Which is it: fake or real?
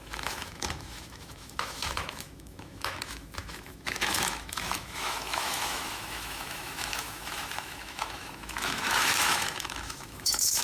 fake